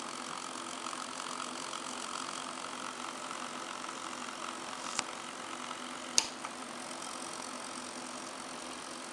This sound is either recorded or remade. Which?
recorded